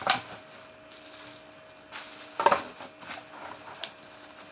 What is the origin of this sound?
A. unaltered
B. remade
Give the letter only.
A